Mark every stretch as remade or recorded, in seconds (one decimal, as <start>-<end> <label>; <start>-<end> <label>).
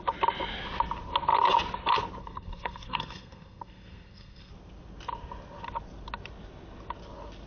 0.0-2.2 recorded; 2.2-4.5 remade; 4.5-7.5 recorded